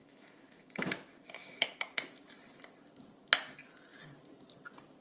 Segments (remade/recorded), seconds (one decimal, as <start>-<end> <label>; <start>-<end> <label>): 0.0-0.8 remade; 0.8-5.0 recorded